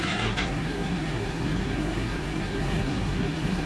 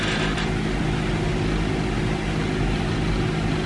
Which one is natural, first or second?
second